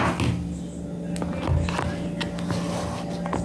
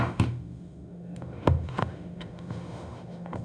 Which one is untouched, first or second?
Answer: first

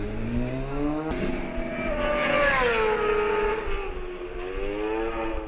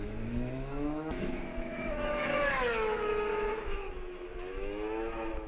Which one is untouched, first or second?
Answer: first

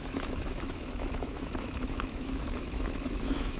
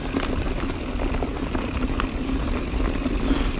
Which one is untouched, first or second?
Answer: second